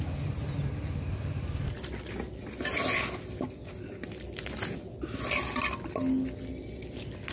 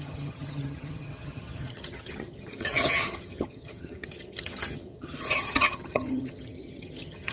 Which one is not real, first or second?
second